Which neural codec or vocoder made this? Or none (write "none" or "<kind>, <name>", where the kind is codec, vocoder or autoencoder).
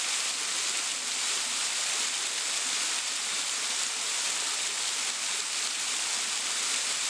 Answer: none